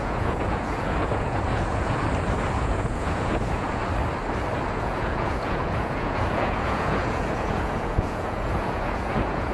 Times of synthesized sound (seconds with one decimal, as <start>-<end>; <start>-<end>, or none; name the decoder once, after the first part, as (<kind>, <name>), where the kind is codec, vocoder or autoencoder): 0.0-2.0 (vocoder, Vocos); 2.6-3.8; 4.7-9.5